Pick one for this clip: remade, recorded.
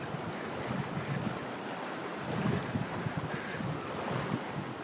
recorded